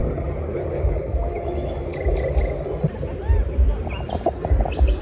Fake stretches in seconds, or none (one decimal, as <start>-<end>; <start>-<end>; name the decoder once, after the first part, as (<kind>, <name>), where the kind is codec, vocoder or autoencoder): 0.9-1.9 (autoencoder, DAC-VAE)